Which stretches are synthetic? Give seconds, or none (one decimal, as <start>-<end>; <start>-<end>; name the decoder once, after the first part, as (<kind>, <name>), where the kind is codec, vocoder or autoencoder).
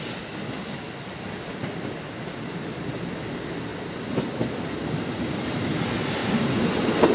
none